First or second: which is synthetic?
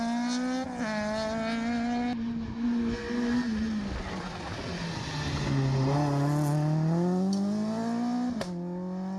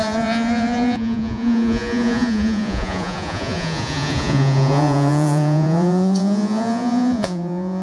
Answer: second